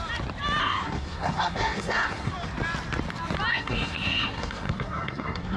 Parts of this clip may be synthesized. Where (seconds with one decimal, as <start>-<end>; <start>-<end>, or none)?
0.6-2.3; 3.5-5.6